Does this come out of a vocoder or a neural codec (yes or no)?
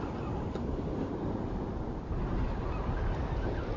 no